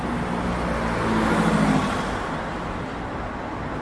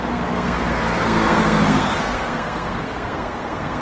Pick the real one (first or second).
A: first